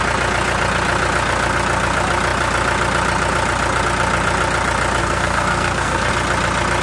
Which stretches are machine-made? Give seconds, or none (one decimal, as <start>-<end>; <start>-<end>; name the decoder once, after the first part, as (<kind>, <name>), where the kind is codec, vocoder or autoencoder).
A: 5.0-6.1 (codec, SNAC)

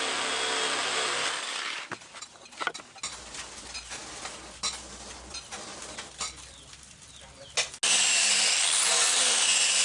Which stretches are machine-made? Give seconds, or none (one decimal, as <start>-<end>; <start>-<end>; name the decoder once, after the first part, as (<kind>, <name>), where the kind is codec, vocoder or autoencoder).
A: none